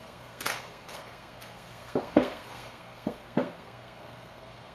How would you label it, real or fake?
fake